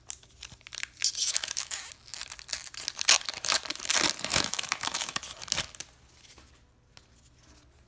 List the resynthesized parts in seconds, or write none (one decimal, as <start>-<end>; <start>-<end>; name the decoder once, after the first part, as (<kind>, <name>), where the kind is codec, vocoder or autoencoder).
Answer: 1.2-1.8 (autoencoder, DAC-VAE); 4.3-5.2